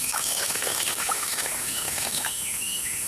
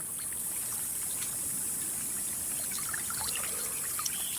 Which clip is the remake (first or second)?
first